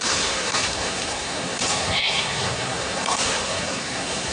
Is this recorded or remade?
remade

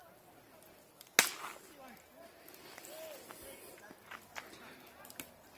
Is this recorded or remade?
recorded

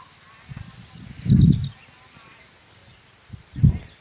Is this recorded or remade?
recorded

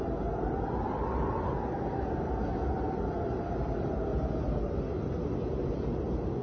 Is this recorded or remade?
recorded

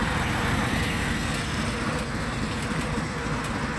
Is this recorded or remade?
recorded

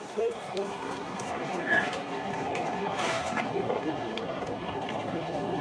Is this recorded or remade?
remade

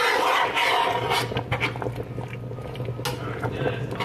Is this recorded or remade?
recorded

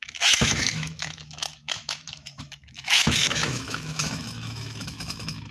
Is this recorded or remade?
remade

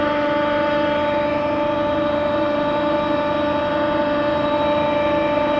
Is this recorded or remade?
recorded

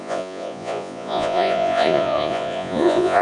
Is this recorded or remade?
remade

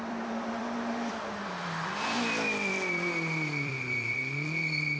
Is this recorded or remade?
remade